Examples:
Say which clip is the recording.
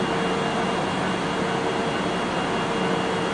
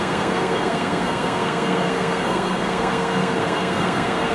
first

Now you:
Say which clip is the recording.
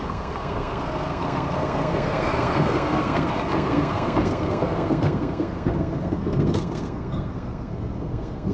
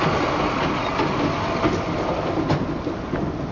second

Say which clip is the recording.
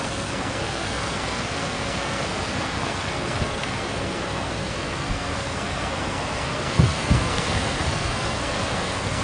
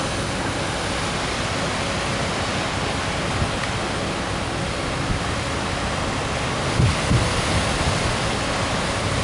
second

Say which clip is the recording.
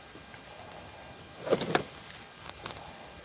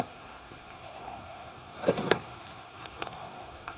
first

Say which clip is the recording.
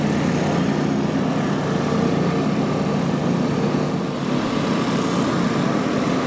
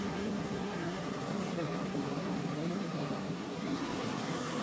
first